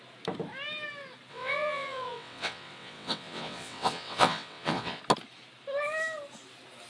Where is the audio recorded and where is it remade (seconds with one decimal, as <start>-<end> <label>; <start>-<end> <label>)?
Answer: 0.0-1.3 recorded; 1.3-5.0 remade; 5.0-6.9 recorded